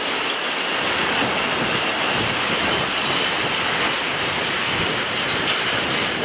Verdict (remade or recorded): recorded